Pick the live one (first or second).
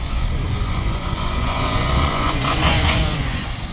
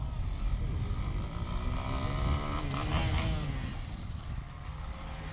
second